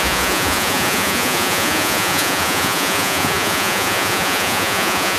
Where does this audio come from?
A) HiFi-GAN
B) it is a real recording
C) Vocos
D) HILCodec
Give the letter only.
C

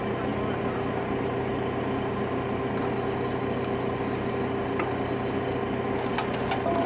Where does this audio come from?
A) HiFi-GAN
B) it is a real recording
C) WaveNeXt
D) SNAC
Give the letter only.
B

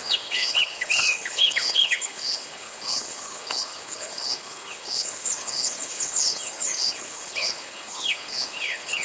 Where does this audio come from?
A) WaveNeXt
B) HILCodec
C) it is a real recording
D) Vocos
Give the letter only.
B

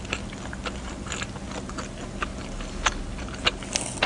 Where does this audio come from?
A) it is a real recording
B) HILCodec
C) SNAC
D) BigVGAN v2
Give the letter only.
A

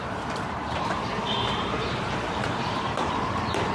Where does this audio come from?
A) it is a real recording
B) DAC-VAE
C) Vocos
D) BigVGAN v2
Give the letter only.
D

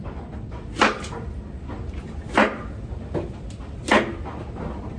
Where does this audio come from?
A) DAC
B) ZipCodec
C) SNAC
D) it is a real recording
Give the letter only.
D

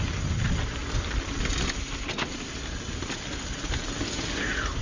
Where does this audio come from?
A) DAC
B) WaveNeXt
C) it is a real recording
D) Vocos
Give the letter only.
C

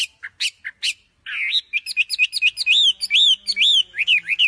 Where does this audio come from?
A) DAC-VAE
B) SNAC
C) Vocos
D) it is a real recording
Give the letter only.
D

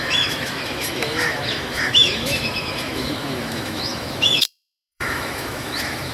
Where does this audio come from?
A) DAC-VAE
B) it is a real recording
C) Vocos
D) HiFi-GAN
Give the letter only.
A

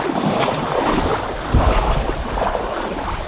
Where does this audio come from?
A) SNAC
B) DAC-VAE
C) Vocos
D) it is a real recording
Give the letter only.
D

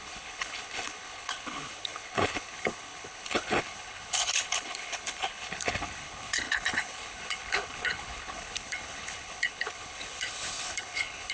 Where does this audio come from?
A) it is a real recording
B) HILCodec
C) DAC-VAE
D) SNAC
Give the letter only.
B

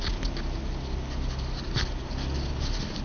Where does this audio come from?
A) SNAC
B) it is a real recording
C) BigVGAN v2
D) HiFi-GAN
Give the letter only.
B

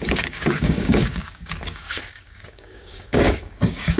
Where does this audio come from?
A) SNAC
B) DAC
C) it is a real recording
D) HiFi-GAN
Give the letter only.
B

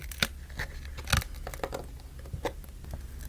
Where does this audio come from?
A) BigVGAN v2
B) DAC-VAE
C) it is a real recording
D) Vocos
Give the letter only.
C